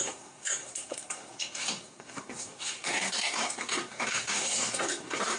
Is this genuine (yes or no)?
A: no